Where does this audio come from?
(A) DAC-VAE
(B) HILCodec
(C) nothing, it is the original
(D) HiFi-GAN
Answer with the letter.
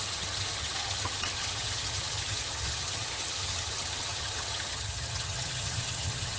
D